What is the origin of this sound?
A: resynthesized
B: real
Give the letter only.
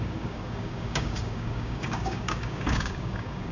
A